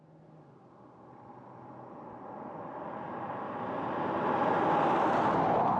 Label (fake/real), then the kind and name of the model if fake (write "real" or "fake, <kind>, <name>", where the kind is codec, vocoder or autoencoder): real